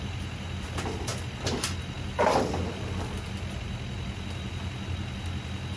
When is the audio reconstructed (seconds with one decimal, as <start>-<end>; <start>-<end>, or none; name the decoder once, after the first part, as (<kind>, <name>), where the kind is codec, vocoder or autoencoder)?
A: none